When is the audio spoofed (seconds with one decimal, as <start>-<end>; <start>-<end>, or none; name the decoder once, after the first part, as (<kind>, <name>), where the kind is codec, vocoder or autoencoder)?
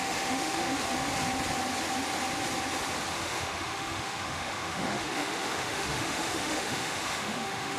0.0-0.6 (autoencoder, DAC-VAE); 3.1-7.8